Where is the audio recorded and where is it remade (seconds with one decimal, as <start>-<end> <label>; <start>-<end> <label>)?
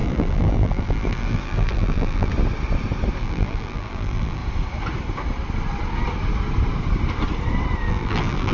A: 0.0-2.3 remade; 2.3-3.2 recorded; 3.2-4.4 remade; 4.4-7.9 recorded; 7.9-8.5 remade